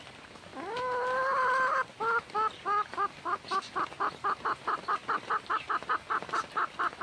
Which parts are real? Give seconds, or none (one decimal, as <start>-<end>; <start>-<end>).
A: 0.0-7.0